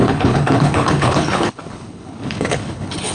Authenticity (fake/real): fake